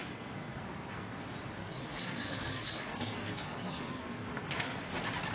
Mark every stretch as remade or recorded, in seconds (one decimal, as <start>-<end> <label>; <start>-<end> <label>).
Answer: 0.0-1.2 remade; 1.2-1.6 recorded; 1.6-4.8 remade; 4.8-5.3 recorded